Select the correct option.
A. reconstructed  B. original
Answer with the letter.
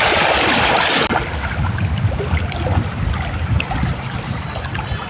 B